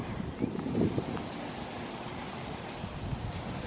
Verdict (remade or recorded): recorded